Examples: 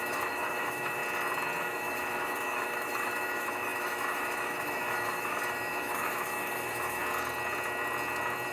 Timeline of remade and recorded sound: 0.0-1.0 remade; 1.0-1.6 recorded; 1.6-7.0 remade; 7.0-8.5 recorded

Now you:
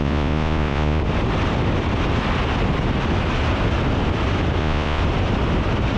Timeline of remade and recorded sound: 0.0-1.0 remade; 1.0-4.6 recorded; 4.6-5.0 remade; 5.0-6.0 recorded

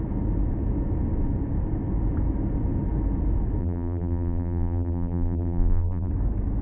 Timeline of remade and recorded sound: 0.0-3.6 recorded; 3.6-6.1 remade; 6.1-6.6 recorded

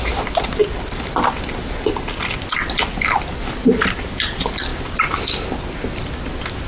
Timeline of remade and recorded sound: 0.0-6.7 recorded

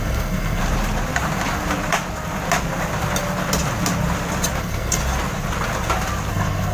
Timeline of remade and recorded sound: 0.0-0.6 remade; 0.6-4.6 recorded; 4.6-5.0 remade; 5.0-6.3 recorded; 6.3-6.7 remade